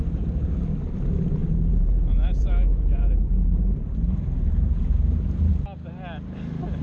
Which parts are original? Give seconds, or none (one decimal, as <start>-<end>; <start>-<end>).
0.0-1.4; 5.5-6.8